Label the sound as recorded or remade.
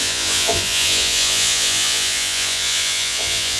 remade